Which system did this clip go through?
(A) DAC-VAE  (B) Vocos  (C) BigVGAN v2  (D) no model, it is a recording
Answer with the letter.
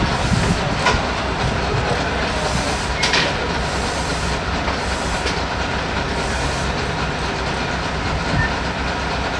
D